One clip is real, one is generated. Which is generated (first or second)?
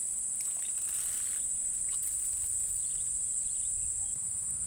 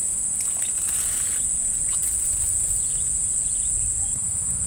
second